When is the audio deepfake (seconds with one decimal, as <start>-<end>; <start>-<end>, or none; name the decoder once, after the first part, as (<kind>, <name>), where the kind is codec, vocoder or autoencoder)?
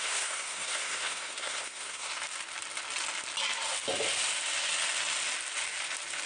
0.0-2.1 (codec, SNAC)